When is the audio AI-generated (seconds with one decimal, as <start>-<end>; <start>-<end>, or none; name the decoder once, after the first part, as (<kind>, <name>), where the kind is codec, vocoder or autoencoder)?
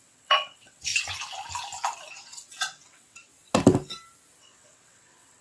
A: 0.0-0.9 (vocoder, WaveNeXt); 2.1-3.3; 4.4-5.4